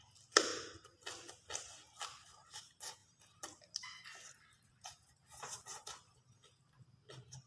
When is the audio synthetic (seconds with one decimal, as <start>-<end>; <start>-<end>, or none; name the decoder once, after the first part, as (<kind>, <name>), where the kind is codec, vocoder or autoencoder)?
none